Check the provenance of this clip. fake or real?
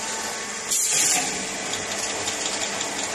real